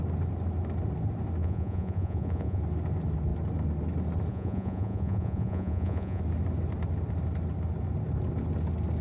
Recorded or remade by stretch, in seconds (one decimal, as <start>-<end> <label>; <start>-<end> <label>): 0.0-1.4 recorded; 1.4-2.6 remade; 2.6-4.3 recorded; 4.3-6.2 remade; 6.2-9.0 recorded